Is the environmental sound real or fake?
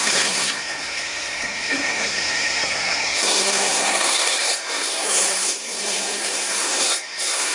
fake